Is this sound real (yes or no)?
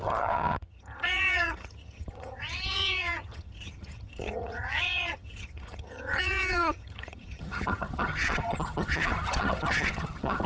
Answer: no